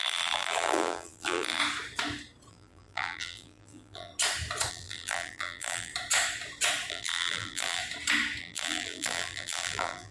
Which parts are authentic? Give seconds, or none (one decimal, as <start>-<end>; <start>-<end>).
1.6-2.5; 4.1-4.7; 5.9-6.9; 7.8-8.4